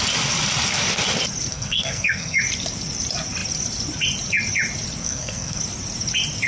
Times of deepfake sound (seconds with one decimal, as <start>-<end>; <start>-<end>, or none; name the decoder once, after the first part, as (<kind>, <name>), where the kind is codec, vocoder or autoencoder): 1.5-2.4 (codec, SNAC); 5.0-5.6